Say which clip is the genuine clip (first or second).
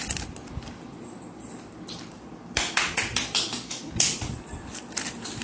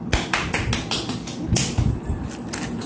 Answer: second